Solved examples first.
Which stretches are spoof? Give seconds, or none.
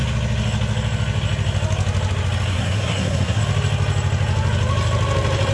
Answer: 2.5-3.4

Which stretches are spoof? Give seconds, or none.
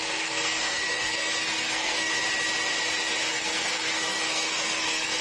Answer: 0.0-2.1; 3.3-5.2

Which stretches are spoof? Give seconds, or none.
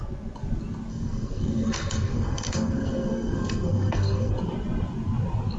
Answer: 0.9-4.3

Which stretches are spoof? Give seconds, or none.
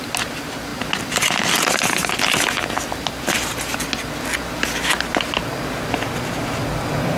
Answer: none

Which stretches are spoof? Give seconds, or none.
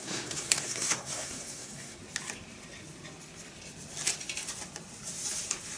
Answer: 0.0-2.0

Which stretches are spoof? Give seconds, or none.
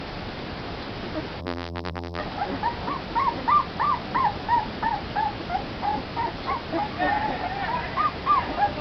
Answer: 1.4-2.2